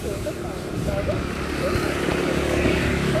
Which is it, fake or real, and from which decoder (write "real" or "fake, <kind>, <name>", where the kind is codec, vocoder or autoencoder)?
fake, codec, DAC